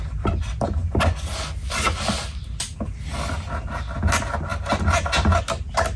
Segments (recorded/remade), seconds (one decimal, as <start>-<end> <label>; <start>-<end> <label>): 0.0-6.0 recorded